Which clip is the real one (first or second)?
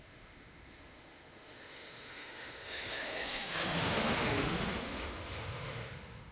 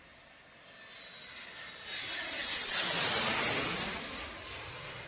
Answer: second